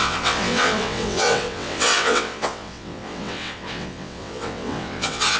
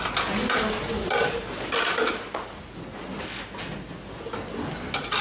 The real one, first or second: second